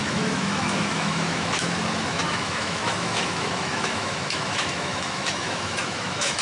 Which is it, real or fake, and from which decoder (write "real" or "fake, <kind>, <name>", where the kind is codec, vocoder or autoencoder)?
fake, autoencoder, DAC-VAE